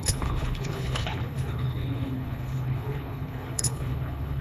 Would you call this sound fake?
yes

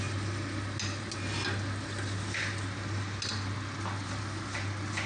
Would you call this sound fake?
no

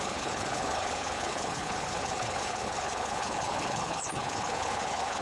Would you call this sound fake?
yes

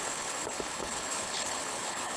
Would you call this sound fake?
yes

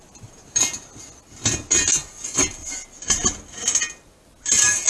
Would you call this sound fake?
no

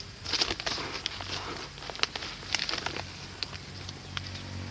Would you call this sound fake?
no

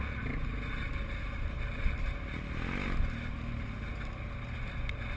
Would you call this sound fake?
no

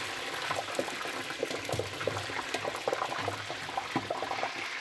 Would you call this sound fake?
no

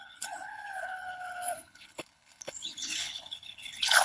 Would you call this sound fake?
yes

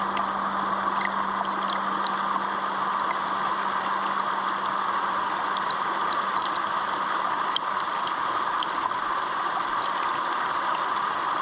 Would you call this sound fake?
no